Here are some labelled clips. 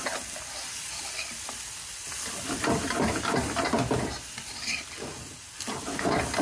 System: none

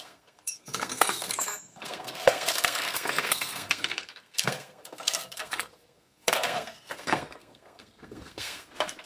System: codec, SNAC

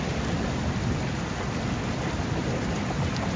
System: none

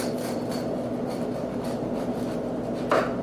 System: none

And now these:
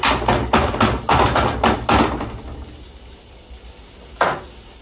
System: none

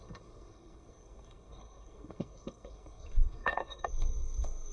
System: codec, SNAC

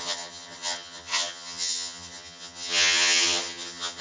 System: vocoder, HiFi-GAN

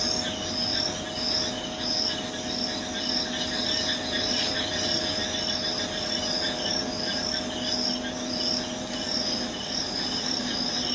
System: none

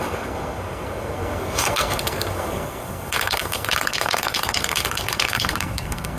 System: codec, SNAC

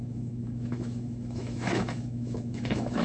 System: autoencoder, DAC-VAE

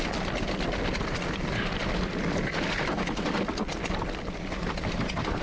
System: none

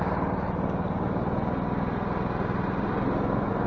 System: none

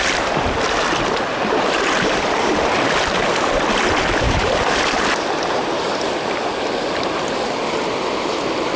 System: none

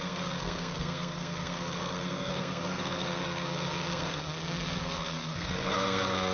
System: codec, SNAC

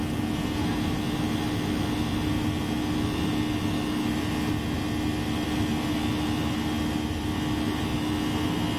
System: none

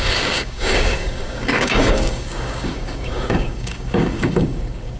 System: codec, DAC